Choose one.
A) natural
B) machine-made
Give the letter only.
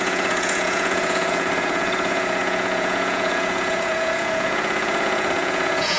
B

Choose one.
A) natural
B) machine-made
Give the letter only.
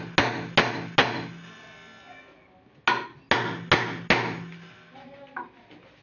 A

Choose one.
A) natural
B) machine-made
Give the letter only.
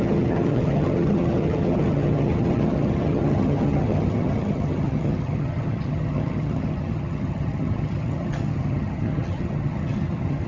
B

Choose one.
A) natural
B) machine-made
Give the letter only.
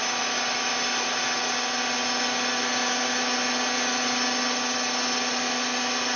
A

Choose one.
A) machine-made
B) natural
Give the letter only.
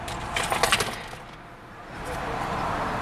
B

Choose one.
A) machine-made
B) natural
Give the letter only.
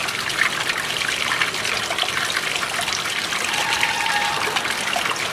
A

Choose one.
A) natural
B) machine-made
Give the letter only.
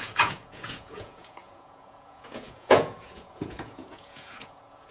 B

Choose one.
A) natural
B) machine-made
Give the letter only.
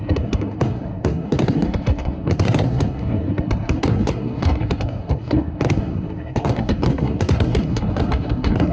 B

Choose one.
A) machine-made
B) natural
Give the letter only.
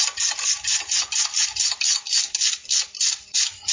B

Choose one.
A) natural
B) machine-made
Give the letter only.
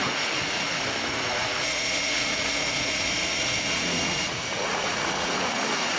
B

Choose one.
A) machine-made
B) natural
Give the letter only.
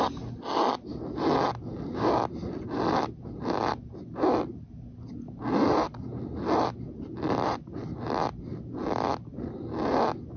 B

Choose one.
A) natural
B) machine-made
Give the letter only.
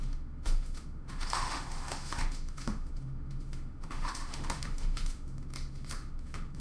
B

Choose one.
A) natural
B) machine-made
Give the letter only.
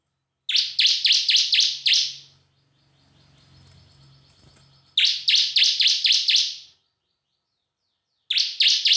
A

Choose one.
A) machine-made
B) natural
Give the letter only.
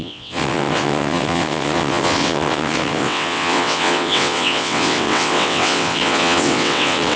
A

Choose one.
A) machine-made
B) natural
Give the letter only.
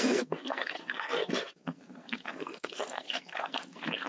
A